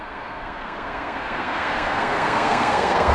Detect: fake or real fake